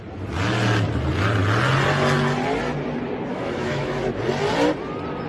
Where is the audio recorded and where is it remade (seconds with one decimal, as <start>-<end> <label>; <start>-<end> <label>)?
0.0-3.3 recorded; 3.3-4.0 remade; 4.0-5.3 recorded

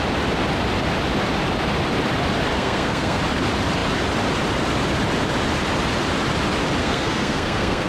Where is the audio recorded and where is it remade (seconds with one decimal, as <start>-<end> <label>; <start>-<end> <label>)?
0.0-2.5 recorded; 2.5-3.2 remade; 3.2-6.8 recorded; 6.8-7.9 remade

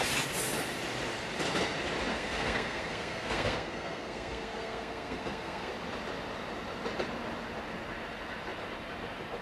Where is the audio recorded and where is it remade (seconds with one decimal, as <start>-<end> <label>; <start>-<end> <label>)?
0.0-2.1 recorded; 2.1-5.7 remade; 5.7-9.4 recorded